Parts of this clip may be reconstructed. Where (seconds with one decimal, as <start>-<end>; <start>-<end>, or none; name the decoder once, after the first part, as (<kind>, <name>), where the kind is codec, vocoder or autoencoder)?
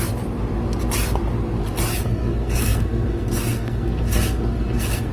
1.9-5.1 (codec, SNAC)